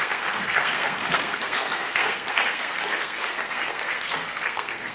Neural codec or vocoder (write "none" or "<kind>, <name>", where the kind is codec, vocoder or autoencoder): codec, SNAC